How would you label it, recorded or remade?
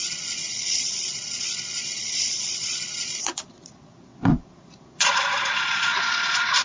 remade